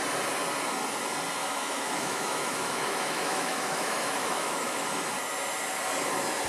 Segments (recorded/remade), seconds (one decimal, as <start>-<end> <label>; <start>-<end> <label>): 0.0-1.4 recorded; 1.4-5.1 remade; 5.1-6.5 recorded